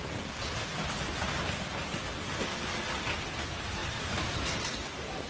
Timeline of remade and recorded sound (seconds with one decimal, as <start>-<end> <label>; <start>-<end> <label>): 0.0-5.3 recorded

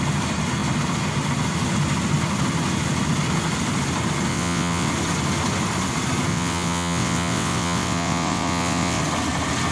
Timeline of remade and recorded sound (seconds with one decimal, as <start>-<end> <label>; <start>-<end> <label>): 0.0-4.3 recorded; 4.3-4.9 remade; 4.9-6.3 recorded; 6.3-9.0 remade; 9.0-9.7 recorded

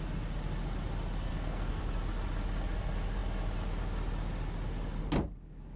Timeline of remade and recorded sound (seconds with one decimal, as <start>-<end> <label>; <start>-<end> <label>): 0.0-1.3 recorded; 1.3-1.8 remade; 1.8-5.8 recorded

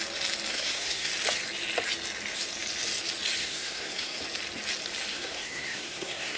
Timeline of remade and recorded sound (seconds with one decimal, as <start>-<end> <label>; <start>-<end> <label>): 0.0-0.5 recorded; 0.5-1.1 remade; 1.1-3.4 recorded; 3.4-4.2 remade; 4.2-5.1 recorded; 5.1-6.4 remade

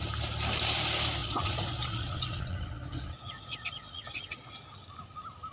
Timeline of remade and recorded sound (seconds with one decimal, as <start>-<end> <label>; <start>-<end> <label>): 0.0-1.2 recorded; 1.2-4.5 remade; 4.5-5.5 recorded